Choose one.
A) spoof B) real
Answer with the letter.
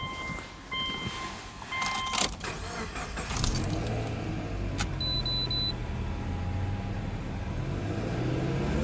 B